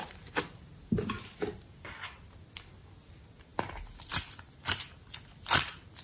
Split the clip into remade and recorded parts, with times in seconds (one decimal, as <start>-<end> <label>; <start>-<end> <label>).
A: 0.0-6.0 recorded